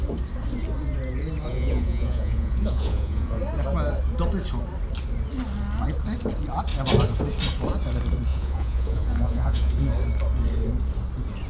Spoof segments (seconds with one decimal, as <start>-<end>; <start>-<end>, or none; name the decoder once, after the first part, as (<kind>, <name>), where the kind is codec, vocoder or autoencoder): 1.5-3.4 (vocoder, Vocos); 8.3-9.7